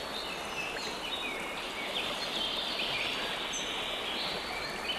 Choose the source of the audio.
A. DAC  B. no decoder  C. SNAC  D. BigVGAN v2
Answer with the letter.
B